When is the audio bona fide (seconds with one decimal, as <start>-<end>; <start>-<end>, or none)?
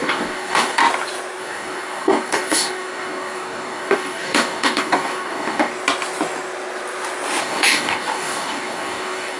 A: 0.8-1.4; 5.7-7.4